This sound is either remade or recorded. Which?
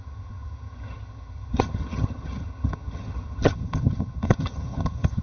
remade